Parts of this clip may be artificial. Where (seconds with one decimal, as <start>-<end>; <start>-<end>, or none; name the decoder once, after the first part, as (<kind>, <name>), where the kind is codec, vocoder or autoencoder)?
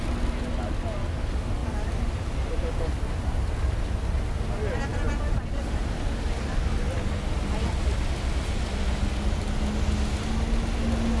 none